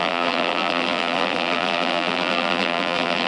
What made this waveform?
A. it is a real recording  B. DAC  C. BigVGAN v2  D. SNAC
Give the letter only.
C